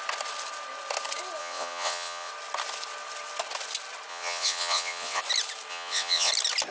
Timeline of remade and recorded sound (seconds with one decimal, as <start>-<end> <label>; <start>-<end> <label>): 0.0-1.4 recorded; 1.4-2.3 remade; 2.3-4.1 recorded; 4.1-5.2 remade; 5.2-5.7 recorded; 5.7-6.3 remade; 6.3-6.7 recorded